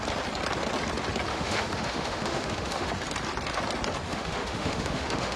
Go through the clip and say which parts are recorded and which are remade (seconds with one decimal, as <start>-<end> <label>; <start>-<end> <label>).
0.0-1.3 recorded; 1.3-2.9 remade; 2.9-4.1 recorded; 4.1-5.4 remade